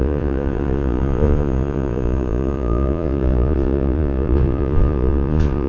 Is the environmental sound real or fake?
fake